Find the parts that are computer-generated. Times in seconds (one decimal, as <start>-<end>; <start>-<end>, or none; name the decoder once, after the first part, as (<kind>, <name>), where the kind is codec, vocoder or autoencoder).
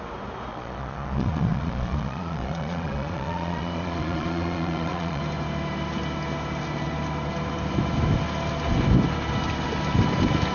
0.5-5.2 (vocoder, Vocos)